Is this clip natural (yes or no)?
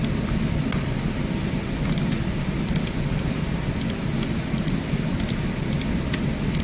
yes